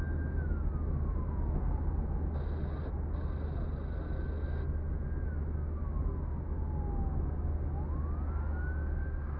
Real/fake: real